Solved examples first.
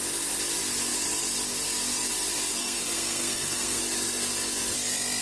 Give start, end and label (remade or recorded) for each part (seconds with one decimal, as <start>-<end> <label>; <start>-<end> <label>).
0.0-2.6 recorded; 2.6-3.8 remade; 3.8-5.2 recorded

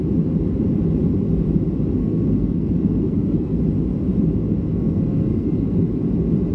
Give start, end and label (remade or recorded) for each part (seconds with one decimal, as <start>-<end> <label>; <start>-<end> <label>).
0.0-2.0 recorded; 2.0-3.6 remade; 3.6-4.7 recorded; 4.7-5.8 remade; 5.8-6.5 recorded

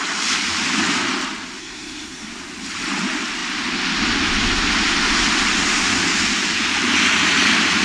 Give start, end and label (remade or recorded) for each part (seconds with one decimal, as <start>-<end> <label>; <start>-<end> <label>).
0.0-1.6 recorded; 1.6-2.3 remade; 2.3-7.8 recorded

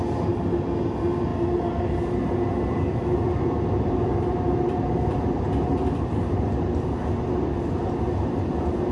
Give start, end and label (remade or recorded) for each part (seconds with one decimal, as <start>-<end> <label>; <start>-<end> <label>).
0.0-8.9 recorded

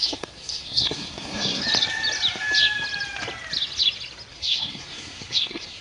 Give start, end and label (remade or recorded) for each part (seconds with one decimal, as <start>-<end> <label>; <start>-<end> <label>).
0.0-1.6 remade; 1.6-4.3 recorded; 4.3-5.8 remade

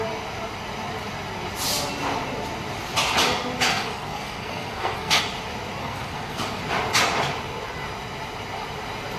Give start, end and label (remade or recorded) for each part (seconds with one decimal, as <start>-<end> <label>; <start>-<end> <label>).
0.0-3.7 recorded; 3.7-5.2 remade; 5.2-5.8 recorded; 5.8-6.6 remade; 6.6-9.2 recorded

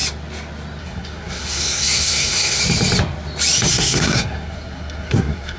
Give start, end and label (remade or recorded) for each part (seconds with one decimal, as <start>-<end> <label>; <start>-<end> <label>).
0.0-0.8 recorded; 0.8-2.6 remade; 2.6-3.7 recorded; 3.7-5.6 remade